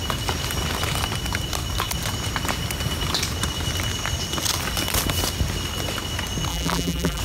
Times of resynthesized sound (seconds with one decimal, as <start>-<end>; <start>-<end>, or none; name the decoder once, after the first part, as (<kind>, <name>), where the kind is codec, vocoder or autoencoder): 6.5-7.2 (vocoder, BigVGAN v2)